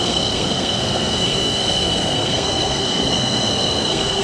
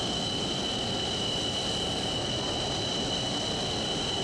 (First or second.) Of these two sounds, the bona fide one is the second